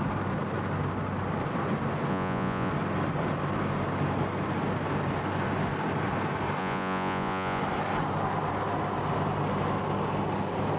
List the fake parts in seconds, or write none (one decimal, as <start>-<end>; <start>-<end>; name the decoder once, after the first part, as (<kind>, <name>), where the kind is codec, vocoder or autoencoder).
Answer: 2.1-2.7 (vocoder, Vocos); 6.6-7.6